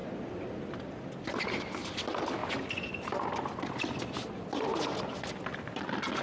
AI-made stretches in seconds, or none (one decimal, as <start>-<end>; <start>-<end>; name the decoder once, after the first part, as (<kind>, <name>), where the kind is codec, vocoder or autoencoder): none